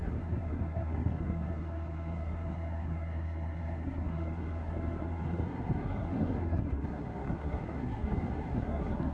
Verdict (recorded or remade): remade